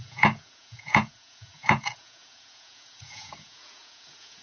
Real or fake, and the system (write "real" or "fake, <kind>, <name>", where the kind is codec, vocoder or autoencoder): fake, vocoder, Vocos